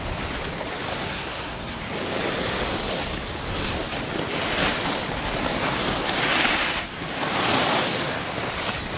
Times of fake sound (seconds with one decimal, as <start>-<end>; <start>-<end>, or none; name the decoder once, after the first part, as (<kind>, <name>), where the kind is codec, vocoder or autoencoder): 0.9-1.8 (codec, SNAC)